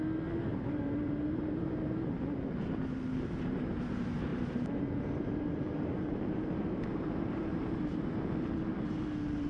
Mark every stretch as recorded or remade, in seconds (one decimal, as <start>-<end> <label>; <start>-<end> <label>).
0.0-0.5 recorded; 0.5-2.0 remade; 2.0-4.3 recorded; 4.3-8.1 remade; 8.1-9.5 recorded